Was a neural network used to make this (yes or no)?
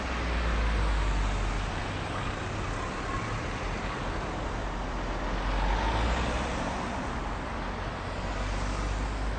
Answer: no